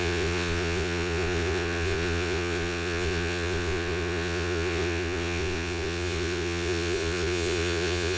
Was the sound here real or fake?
fake